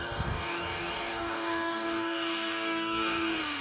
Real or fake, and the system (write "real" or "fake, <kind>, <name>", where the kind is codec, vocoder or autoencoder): fake, codec, DAC